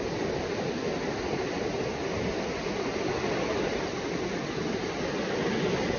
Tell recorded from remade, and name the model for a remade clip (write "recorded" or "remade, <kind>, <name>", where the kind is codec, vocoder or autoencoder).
recorded